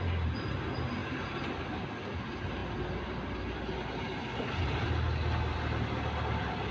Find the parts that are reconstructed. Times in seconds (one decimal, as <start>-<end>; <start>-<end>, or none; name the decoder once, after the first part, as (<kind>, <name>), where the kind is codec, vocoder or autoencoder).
none